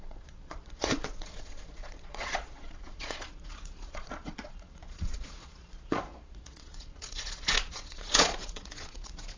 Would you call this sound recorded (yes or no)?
no